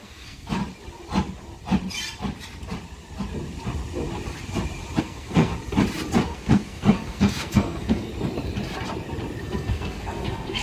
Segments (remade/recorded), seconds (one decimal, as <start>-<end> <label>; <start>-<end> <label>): 0.0-0.6 remade; 0.6-5.0 recorded; 5.0-5.5 remade; 5.5-6.2 recorded; 6.2-8.1 remade; 8.1-9.4 recorded; 9.4-10.6 remade